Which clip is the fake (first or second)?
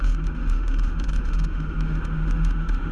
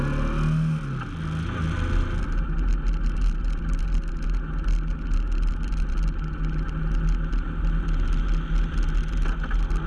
first